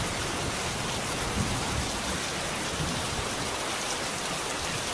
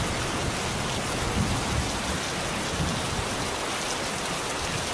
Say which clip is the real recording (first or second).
second